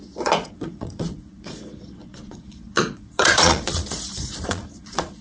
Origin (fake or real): fake